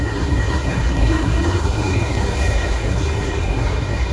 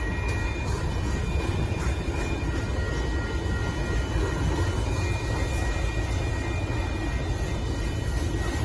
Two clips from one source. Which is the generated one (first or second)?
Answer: first